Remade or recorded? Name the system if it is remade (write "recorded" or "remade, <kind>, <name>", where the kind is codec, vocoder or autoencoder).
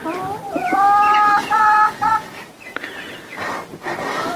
recorded